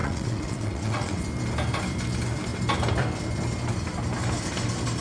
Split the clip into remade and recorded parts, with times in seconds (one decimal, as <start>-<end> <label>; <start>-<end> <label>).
0.0-1.2 remade; 1.2-5.0 recorded